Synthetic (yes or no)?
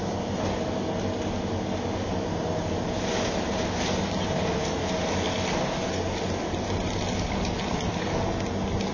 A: no